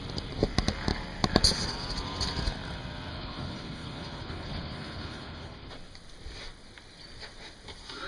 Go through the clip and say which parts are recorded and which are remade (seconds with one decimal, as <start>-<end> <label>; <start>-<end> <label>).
0.0-3.1 recorded; 3.1-5.7 remade; 5.7-8.1 recorded